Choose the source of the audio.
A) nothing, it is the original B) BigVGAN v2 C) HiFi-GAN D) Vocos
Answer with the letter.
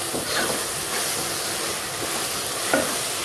A